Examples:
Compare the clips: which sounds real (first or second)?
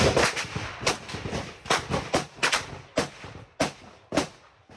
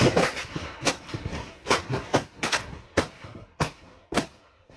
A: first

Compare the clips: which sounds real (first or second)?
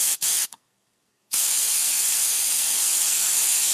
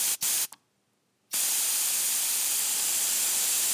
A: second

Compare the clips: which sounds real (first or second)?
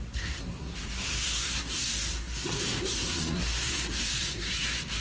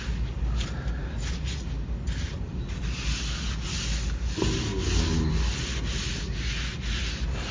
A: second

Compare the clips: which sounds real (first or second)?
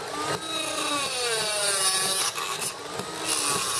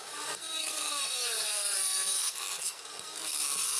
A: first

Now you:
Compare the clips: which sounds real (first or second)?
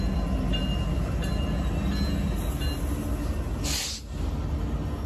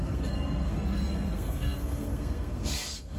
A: first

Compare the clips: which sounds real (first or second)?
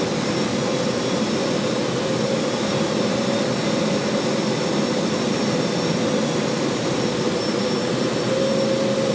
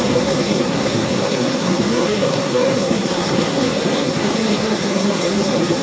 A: first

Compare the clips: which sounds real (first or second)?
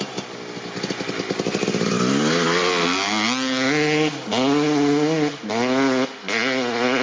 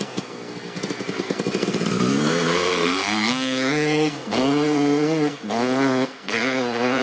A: first